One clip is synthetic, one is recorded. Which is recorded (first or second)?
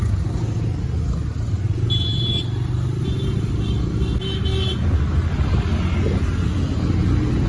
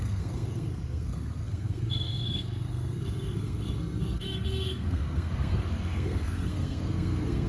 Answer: first